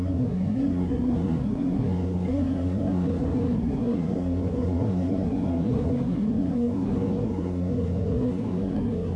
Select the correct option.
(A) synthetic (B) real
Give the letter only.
A